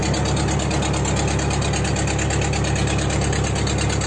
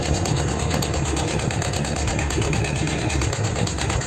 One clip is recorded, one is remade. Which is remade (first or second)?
second